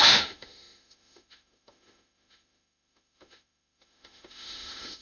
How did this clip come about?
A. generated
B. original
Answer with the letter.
A